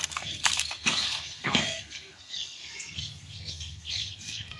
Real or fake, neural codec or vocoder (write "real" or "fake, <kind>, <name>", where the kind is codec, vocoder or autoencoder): fake, codec, SNAC